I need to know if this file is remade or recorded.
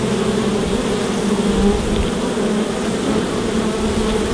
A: recorded